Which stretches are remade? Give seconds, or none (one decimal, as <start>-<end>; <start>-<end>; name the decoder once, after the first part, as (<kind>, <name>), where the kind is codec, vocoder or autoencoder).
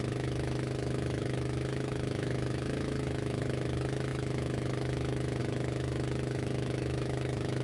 0.0-7.6 (autoencoder, DAC-VAE)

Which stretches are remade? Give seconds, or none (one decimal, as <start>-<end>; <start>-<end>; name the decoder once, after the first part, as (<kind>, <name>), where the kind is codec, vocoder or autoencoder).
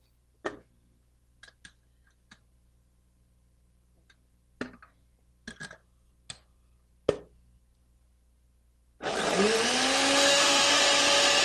10.3-10.8 (autoencoder, DAC-VAE)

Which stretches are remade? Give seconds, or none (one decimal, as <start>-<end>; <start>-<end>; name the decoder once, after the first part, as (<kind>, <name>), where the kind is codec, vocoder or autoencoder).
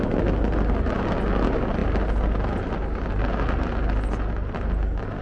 none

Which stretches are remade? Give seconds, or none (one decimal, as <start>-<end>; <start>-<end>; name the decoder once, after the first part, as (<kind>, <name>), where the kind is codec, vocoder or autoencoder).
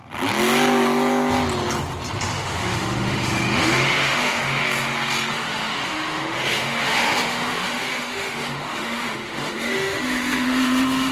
2.3-4.6 (autoencoder, DAC-VAE); 5.3-11.1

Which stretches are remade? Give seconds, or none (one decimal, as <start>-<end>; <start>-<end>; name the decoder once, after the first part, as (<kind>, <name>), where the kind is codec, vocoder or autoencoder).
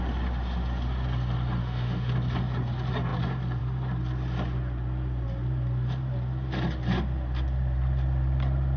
1.6-2.1 (autoencoder, DAC-VAE)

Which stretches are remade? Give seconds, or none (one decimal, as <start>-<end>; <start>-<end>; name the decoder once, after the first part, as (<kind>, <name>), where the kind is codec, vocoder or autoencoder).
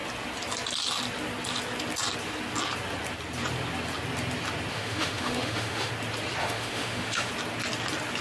4.7-5.9 (autoencoder, DAC-VAE); 6.4-7.3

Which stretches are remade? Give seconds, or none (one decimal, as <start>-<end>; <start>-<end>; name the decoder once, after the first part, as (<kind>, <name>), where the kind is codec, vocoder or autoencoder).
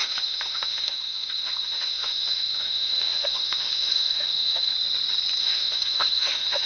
0.0-4.7 (autoencoder, DAC-VAE); 5.4-6.7